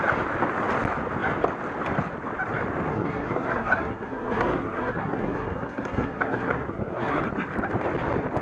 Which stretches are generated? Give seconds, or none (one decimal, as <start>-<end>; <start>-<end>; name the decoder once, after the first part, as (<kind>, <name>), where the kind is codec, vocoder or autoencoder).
2.9-7.2 (codec, SNAC)